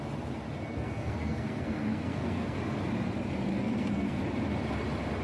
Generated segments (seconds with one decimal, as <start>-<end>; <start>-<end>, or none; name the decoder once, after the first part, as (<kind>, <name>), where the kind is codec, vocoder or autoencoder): 0.7-2.6 (codec, SNAC); 3.5-4.2